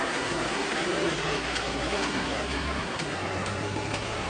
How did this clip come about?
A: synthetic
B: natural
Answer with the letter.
A